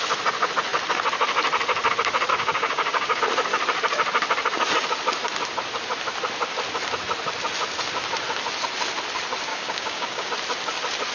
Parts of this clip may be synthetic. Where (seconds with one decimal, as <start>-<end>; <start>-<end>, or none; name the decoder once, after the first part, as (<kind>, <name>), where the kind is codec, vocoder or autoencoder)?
2.3-3.2 (codec, DAC); 9.5-10.3

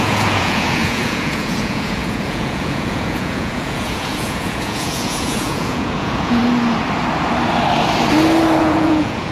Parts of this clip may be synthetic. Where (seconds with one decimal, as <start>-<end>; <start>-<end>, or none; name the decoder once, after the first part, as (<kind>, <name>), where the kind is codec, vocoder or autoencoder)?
0.0-6.4 (vocoder, Vocos); 8.6-9.3

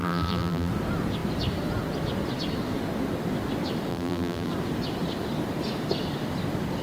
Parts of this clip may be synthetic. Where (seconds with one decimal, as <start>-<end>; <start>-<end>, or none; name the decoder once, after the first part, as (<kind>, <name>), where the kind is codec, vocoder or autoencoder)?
0.0-0.7 (vocoder, BigVGAN v2); 3.9-4.5

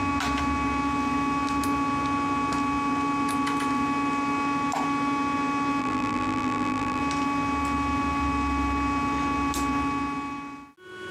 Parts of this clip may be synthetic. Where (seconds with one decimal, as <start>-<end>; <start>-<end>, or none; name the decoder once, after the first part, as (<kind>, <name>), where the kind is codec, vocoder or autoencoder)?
5.8-7.0 (vocoder, BigVGAN v2)

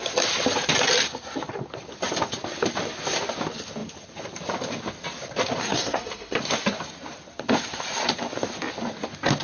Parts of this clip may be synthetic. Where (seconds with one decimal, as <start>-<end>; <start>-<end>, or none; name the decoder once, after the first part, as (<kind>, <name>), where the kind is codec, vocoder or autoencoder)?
5.6-6.4 (codec, SNAC)

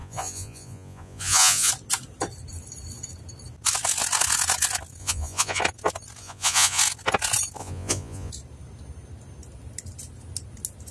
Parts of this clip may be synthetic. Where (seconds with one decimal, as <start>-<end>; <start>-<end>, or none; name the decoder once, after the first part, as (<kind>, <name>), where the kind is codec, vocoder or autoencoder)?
0.0-1.7 (vocoder, Vocos); 5.0-5.6; 6.2-6.8; 7.6-8.3

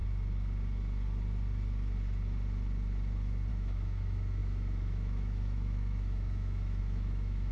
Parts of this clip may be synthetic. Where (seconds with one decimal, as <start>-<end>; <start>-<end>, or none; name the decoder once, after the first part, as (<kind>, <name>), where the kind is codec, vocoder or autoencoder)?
3.5-7.5 (autoencoder, DAC-VAE)